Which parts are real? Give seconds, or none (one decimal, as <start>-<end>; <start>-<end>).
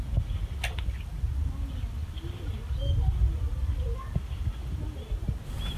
0.0-5.8